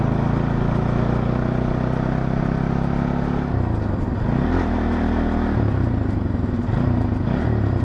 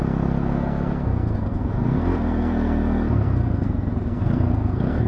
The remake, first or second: second